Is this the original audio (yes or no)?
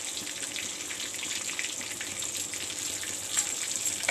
yes